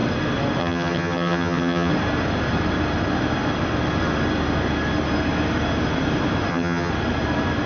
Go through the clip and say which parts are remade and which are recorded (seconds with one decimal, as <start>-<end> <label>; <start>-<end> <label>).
0.0-0.6 recorded; 0.6-1.9 remade; 1.9-6.5 recorded; 6.5-6.9 remade; 6.9-7.7 recorded